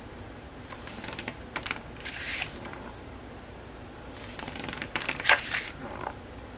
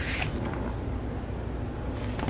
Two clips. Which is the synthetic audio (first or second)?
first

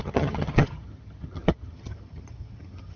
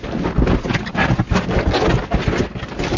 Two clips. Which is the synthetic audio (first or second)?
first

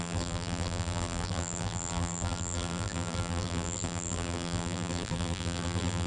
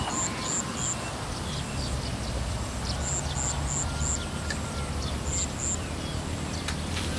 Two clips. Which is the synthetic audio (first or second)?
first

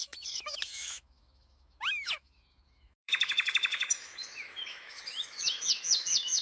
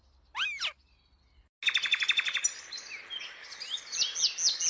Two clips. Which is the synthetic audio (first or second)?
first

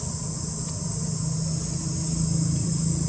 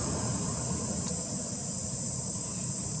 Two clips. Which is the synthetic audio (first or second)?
second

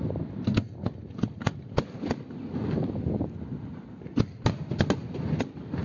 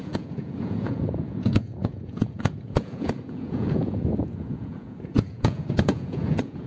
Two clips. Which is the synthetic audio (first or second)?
second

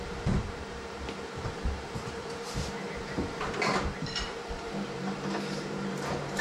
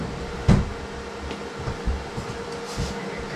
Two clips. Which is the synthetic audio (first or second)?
first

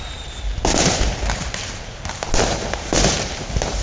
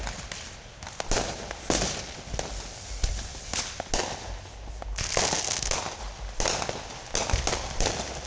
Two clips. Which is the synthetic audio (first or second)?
first